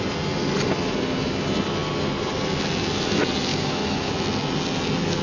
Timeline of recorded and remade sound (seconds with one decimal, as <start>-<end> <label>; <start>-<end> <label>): 0.0-3.5 recorded; 3.5-4.1 remade; 4.1-5.2 recorded